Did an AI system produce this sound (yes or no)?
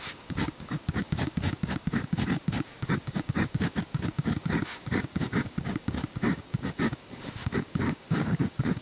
yes